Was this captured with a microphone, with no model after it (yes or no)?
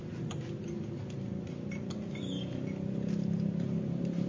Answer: yes